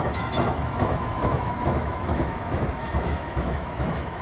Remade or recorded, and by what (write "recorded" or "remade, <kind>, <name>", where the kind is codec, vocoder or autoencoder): remade, autoencoder, DAC-VAE